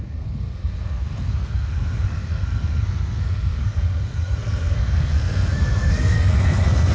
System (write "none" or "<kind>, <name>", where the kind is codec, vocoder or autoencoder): codec, SNAC